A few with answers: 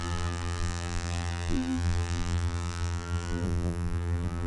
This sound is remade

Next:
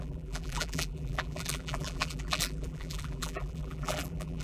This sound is remade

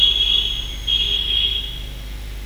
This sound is recorded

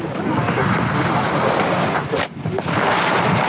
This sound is recorded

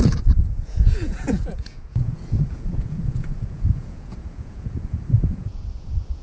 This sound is remade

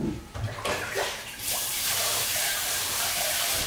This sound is remade